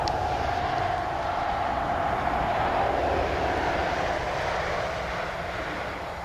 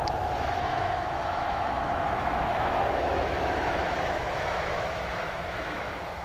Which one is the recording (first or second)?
first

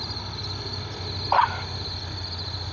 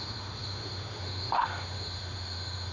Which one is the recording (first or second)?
first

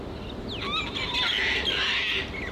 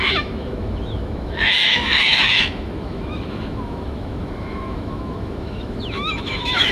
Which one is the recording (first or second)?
first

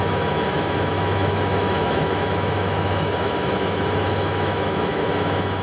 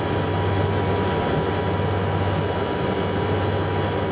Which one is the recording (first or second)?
second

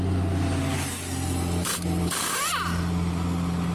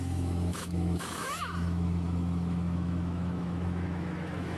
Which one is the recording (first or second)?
first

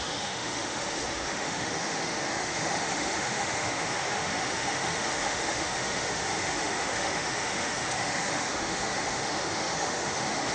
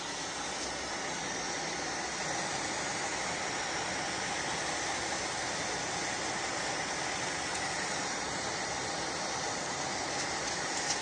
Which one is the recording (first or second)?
second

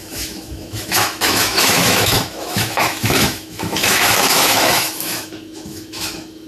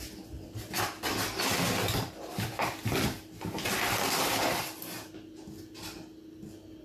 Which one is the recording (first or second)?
second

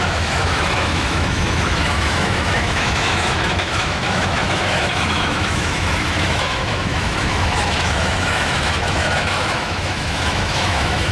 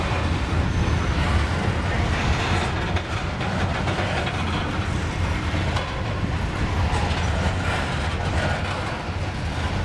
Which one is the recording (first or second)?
second